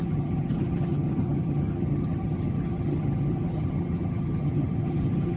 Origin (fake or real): fake